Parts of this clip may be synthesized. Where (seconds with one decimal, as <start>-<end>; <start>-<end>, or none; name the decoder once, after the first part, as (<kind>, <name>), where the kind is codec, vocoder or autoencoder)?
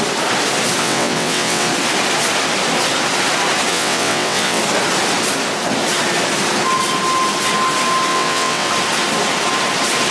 0.8-1.7 (vocoder, WaveNeXt); 3.7-4.6; 8.1-8.7